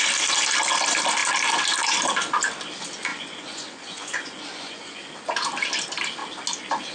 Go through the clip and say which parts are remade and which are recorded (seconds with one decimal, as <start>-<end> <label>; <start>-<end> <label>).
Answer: 0.0-3.1 recorded; 3.1-5.1 remade; 5.1-6.9 recorded